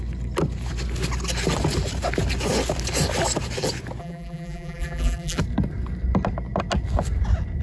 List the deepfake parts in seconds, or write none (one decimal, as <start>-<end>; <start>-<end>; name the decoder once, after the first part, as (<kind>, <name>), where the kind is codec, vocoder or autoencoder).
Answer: 4.0-5.4 (vocoder, BigVGAN v2)